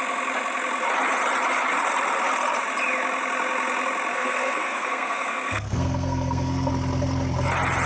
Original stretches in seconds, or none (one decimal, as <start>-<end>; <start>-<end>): 0.0-4.1; 6.7-7.9